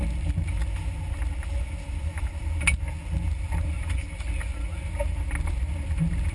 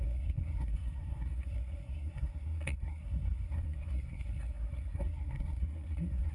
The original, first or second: first